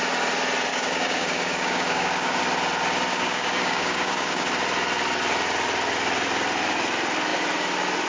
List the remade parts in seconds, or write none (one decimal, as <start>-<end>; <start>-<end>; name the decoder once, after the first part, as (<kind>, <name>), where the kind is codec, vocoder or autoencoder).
0.7-2.4 (codec, DAC); 3.1-4.5